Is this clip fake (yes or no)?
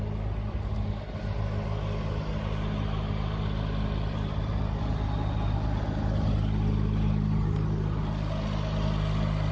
no